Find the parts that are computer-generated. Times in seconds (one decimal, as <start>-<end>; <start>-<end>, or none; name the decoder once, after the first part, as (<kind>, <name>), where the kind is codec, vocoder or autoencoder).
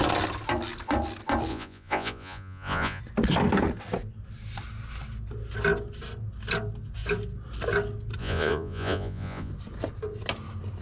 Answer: 1.5-3.0 (vocoder, Vocos); 8.2-9.5